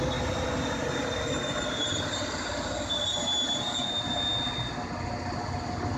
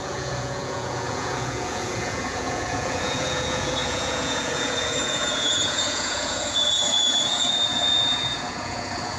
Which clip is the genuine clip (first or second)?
first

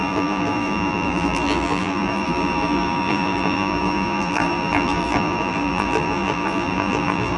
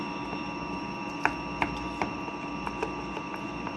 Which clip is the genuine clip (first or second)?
second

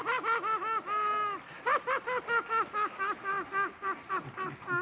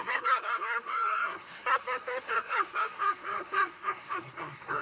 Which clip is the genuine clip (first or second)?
first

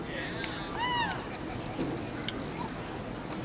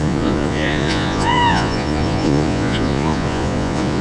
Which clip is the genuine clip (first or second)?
first